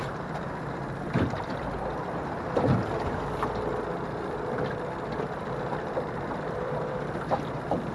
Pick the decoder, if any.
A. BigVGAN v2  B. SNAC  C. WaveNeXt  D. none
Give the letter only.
A